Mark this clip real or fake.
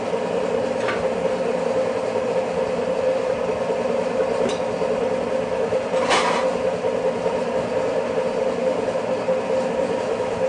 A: real